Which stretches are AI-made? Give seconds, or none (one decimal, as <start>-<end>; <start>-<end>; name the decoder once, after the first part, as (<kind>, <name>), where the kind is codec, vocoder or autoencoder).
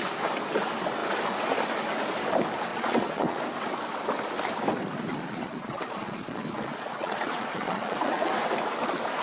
2.7-3.4 (vocoder, Vocos); 5.1-8.3